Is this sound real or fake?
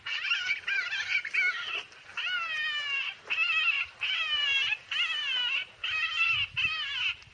real